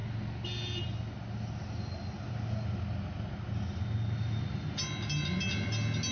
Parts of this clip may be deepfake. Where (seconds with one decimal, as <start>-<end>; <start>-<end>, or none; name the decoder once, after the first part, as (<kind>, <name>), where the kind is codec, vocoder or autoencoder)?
none